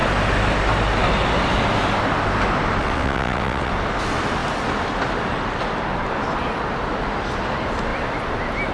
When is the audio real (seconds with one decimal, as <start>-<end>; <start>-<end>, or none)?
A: 0.0-2.8; 3.7-8.7